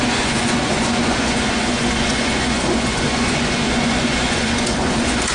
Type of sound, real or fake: fake